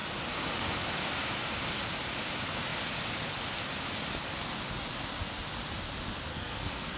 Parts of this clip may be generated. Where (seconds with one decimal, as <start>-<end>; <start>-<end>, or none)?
6.3-7.0